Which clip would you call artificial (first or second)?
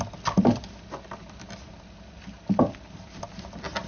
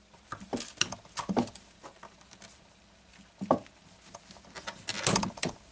first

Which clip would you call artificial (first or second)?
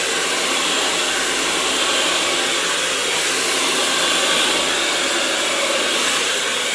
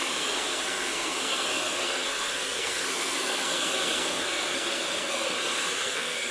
second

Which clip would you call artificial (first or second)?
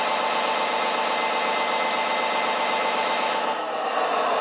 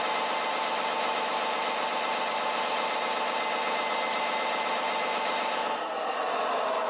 second